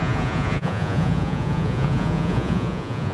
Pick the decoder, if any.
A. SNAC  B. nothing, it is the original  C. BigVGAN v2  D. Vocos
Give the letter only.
D